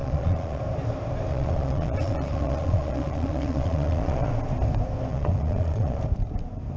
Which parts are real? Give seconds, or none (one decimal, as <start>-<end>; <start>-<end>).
0.6-1.3; 4.3-5.1; 6.0-6.8